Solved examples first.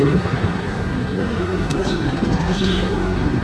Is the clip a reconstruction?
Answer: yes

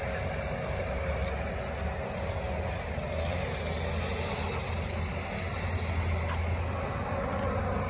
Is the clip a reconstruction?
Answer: no